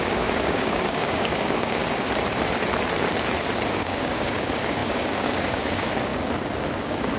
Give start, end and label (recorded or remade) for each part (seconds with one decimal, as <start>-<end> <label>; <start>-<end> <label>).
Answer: 0.0-1.8 remade; 1.8-3.7 recorded; 3.7-6.1 remade; 6.1-6.8 recorded; 6.8-7.2 remade